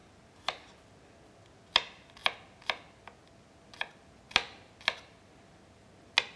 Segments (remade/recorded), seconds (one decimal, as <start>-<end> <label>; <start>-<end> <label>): 0.0-6.4 recorded